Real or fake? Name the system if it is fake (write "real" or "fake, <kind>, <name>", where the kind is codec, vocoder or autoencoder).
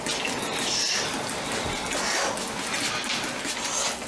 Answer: real